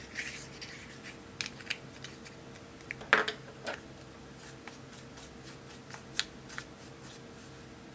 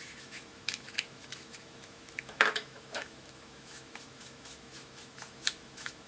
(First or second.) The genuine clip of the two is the first